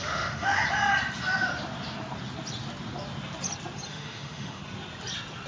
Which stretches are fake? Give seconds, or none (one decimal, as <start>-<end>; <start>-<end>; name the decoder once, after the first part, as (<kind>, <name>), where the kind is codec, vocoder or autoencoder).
0.0-0.6 (autoencoder, DAC-VAE); 3.9-4.6